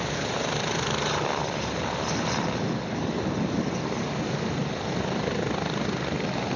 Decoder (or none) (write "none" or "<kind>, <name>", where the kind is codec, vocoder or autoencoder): none